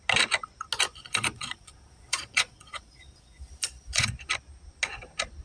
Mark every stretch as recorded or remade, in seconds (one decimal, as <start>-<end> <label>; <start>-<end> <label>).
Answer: 0.0-0.9 recorded; 0.9-4.1 remade; 4.1-5.4 recorded